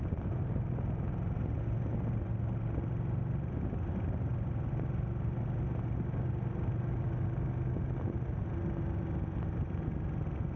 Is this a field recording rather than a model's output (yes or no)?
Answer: yes